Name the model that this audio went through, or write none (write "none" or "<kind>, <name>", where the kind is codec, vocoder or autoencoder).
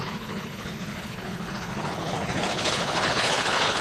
codec, HILCodec